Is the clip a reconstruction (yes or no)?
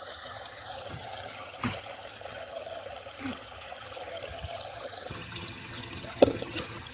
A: yes